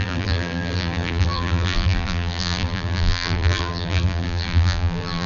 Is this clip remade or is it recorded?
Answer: remade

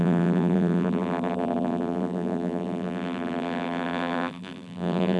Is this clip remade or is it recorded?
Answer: remade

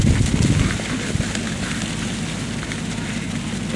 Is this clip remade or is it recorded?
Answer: recorded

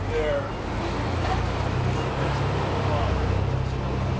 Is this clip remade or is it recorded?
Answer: recorded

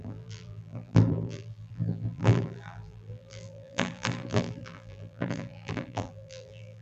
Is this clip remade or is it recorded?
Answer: remade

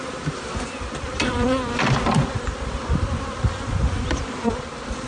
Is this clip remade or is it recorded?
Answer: remade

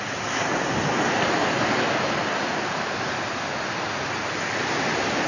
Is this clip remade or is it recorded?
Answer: recorded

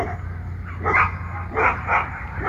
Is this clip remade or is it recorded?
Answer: recorded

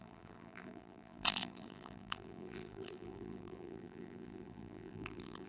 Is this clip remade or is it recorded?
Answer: remade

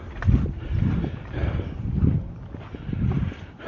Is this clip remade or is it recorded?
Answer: recorded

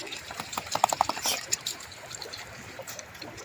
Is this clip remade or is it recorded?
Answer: remade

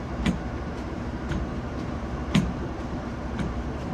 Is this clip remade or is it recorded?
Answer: remade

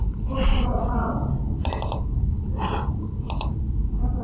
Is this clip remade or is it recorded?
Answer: remade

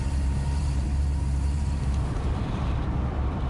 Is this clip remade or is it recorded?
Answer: remade